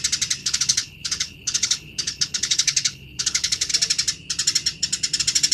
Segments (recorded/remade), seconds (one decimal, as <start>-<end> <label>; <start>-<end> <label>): 0.0-0.4 recorded; 0.4-3.7 remade; 3.7-5.5 recorded